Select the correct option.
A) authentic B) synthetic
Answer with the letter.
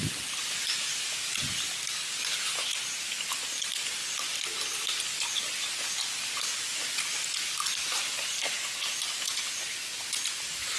A